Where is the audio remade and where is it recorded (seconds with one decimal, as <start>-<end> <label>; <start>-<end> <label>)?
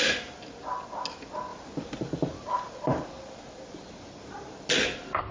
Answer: 0.0-1.5 recorded; 1.5-4.7 remade; 4.7-5.3 recorded